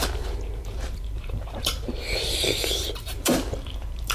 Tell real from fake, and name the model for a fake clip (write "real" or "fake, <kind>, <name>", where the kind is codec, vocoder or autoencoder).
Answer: fake, vocoder, BigVGAN v2